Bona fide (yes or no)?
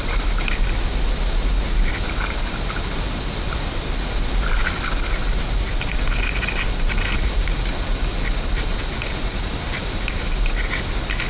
yes